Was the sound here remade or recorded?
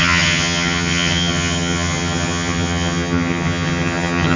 remade